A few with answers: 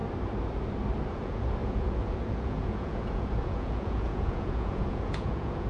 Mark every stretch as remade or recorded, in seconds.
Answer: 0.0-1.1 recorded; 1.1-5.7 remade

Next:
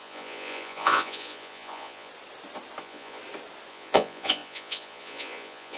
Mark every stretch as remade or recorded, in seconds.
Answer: 0.0-2.1 remade; 2.1-2.8 recorded; 2.8-3.2 remade; 3.2-3.7 recorded; 3.7-5.8 remade

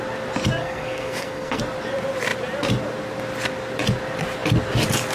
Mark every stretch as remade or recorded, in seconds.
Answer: 0.0-0.6 recorded; 0.6-1.6 remade; 1.6-5.1 recorded

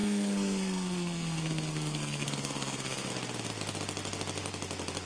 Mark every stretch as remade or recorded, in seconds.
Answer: 0.0-3.1 remade; 3.1-5.1 recorded